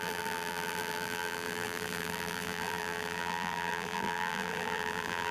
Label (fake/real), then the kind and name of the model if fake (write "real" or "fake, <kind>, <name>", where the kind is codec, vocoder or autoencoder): fake, vocoder, BigVGAN v2